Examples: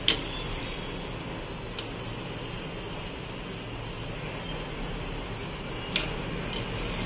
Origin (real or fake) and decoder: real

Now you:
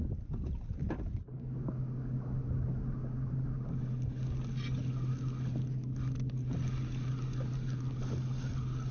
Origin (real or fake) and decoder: real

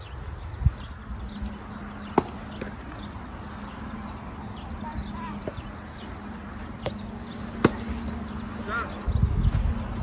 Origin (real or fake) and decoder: real